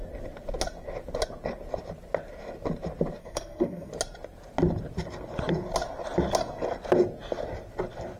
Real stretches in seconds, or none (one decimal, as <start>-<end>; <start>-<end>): 0.0-3.2; 3.9-8.2